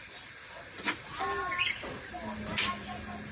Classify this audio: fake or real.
real